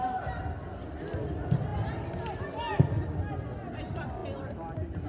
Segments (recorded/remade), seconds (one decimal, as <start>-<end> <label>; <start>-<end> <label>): 0.0-5.1 recorded